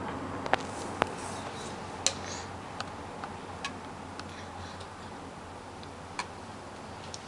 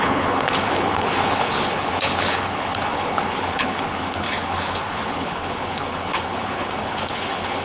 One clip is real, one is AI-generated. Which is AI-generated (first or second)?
second